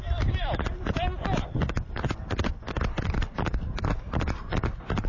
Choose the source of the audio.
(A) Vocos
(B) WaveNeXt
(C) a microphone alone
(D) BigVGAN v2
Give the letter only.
C